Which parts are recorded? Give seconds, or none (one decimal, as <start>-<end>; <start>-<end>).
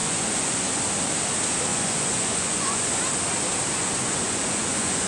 0.8-1.7; 3.0-3.8